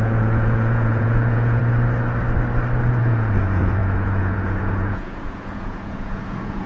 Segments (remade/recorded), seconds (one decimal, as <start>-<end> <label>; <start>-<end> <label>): 0.0-1.6 remade; 1.6-3.0 recorded; 3.0-6.7 remade